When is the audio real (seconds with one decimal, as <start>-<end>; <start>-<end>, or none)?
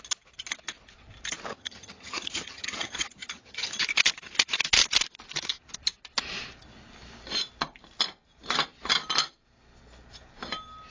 0.0-1.5; 3.8-10.9